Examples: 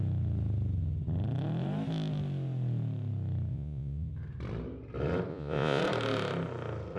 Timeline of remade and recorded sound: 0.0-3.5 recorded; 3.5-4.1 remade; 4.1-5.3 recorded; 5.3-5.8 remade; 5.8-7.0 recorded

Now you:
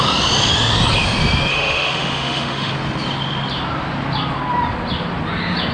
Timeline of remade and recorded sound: 0.0-1.5 recorded; 1.5-2.7 remade; 2.7-5.7 recorded